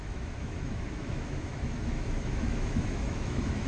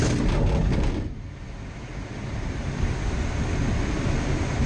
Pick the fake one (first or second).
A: first